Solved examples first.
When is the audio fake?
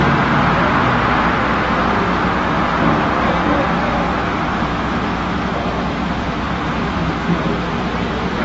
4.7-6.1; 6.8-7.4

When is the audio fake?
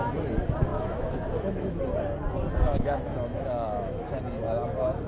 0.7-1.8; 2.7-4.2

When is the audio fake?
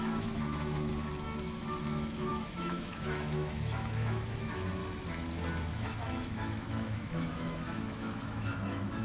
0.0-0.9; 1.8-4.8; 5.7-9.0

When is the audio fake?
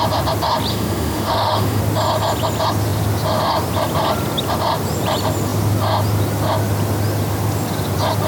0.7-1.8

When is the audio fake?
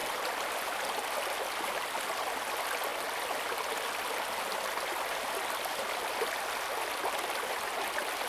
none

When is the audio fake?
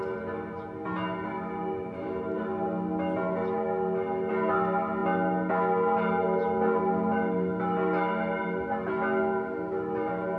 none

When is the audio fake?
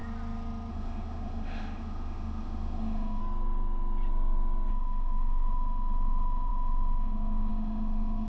0.7-3.2; 4.7-8.3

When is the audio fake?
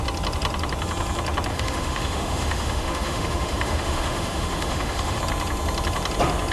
1.5-5.2